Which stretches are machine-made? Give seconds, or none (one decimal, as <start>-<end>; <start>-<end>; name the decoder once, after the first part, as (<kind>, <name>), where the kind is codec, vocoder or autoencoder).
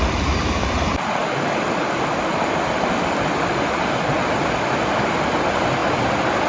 none